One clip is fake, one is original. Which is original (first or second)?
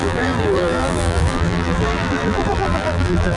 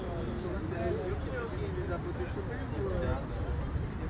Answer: second